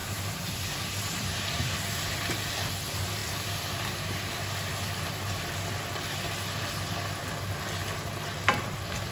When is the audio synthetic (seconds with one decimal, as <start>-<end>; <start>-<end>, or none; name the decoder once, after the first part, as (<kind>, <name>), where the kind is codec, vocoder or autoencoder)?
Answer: 0.0-2.3 (vocoder, BigVGAN v2)